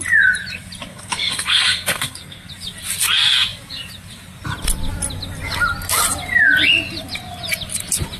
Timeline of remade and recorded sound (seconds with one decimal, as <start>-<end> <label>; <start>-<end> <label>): 0.0-0.9 recorded; 0.9-2.5 remade; 2.5-8.2 recorded